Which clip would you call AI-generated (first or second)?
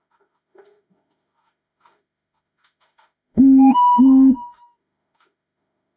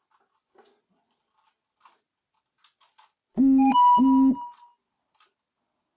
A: first